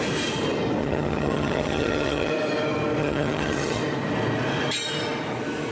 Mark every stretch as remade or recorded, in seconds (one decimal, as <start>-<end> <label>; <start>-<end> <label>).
0.0-0.8 recorded; 0.8-2.3 remade; 2.3-3.0 recorded; 3.0-3.8 remade; 3.8-5.7 recorded